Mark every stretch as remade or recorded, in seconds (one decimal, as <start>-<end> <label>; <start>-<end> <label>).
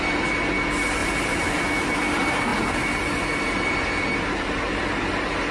0.0-1.0 recorded; 1.0-1.6 remade; 1.6-5.5 recorded